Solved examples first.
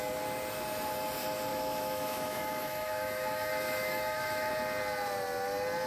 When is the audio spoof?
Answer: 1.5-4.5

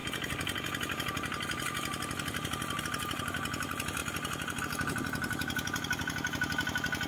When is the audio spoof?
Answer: none

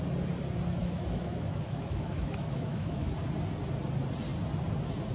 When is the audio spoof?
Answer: 0.8-3.1

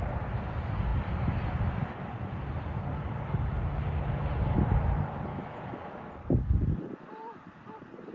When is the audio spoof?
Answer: 5.3-6.1

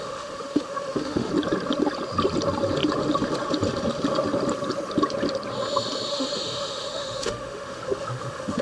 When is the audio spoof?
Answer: 0.0-1.3; 6.1-8.6

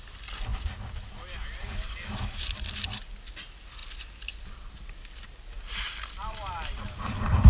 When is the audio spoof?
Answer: none

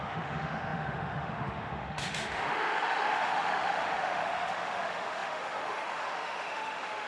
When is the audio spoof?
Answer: 0.0-7.1

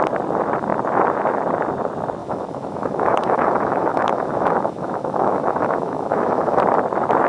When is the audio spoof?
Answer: 2.2-6.6